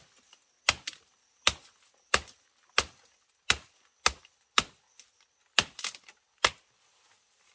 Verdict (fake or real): real